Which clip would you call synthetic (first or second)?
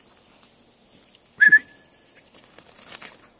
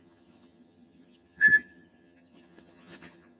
second